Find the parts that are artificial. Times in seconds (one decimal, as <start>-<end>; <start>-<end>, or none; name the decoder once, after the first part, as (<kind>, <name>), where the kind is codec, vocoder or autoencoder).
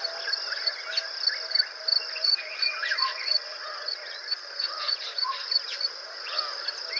2.2-6.4 (vocoder, Vocos)